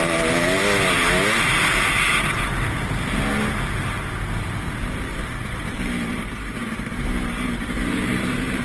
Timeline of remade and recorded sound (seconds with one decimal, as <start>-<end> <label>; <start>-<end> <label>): 0.0-0.6 remade; 0.6-4.7 recorded; 4.7-8.6 remade